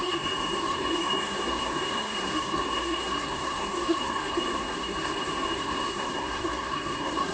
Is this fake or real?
fake